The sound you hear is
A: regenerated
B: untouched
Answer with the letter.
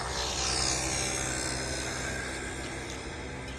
B